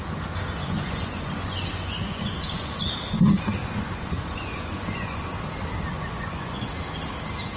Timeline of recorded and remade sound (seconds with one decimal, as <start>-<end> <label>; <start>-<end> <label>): 0.0-0.6 recorded; 0.6-2.9 remade; 2.9-3.6 recorded; 3.6-5.3 remade; 5.3-5.9 recorded; 5.9-6.7 remade; 6.7-7.6 recorded